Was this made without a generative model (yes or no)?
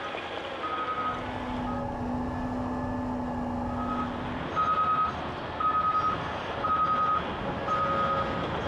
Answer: yes